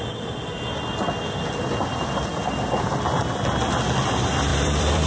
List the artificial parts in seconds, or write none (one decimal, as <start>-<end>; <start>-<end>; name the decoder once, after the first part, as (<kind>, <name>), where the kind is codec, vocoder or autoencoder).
4.5-5.1 (vocoder, BigVGAN v2)